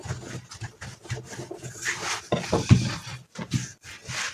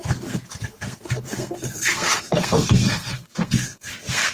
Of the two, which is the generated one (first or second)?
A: second